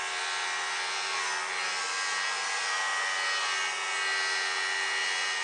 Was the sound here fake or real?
real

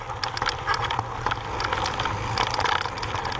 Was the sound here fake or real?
real